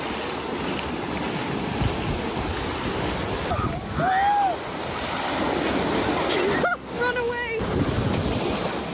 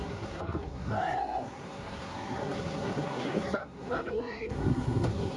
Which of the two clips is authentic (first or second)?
first